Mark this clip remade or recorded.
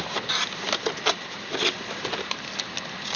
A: recorded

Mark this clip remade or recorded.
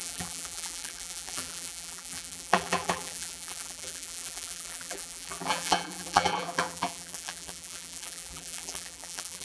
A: remade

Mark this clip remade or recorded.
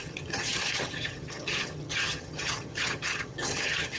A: remade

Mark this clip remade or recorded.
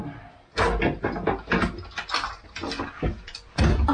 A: recorded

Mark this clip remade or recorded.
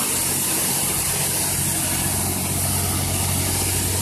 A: recorded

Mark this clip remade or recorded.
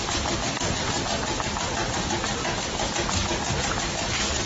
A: recorded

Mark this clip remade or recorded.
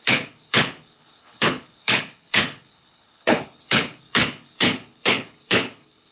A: remade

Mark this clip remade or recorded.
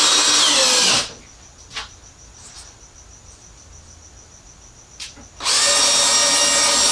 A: recorded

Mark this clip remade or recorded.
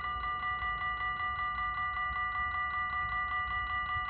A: recorded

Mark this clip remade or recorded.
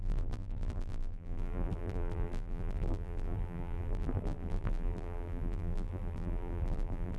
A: remade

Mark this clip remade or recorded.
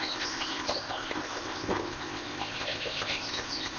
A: remade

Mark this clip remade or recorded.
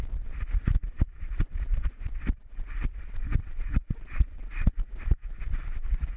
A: recorded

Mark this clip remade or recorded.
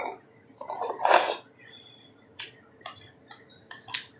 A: remade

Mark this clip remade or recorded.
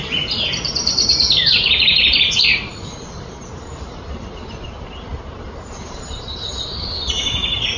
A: remade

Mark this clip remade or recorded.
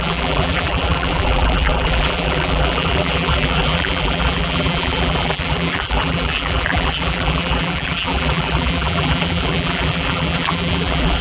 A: remade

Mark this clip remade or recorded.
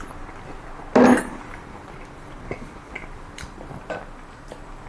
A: recorded